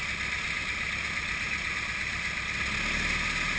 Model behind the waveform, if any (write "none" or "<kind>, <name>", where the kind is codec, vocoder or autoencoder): none